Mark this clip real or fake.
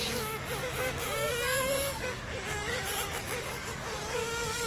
fake